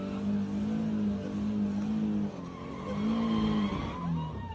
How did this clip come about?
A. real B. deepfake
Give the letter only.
A